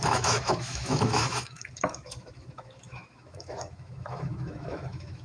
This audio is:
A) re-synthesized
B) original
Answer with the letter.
A